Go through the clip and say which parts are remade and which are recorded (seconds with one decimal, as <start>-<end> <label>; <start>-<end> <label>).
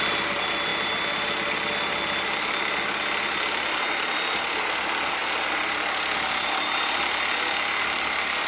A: 0.0-8.5 recorded